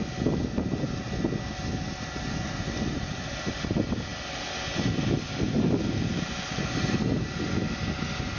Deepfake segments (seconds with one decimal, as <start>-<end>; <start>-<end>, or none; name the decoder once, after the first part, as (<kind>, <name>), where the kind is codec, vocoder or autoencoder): none